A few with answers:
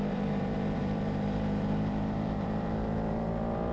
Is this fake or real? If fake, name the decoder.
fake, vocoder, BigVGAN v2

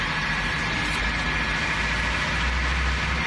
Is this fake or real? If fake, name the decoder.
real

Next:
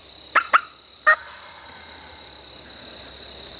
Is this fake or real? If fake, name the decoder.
fake, vocoder, BigVGAN v2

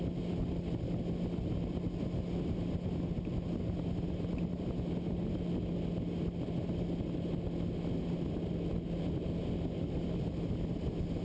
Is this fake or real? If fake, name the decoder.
real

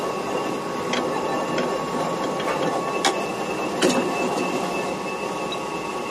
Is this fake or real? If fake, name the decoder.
real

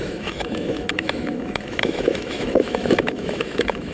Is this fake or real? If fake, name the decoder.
fake, autoencoder, DAC-VAE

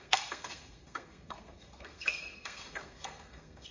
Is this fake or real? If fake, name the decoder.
fake, codec, SNAC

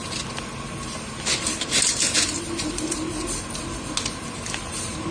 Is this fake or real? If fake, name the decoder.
real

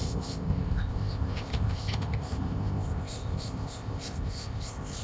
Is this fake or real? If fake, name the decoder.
fake, codec, ZipCodec